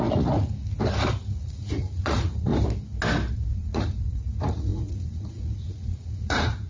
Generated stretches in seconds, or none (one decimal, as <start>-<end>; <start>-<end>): 0.0-0.5; 1.4-2.5; 3.3-6.7